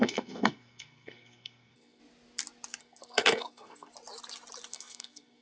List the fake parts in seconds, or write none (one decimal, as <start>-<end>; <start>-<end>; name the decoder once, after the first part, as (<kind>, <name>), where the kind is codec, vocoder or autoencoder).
0.0-2.0 (codec, SNAC); 2.8-3.9; 4.7-5.4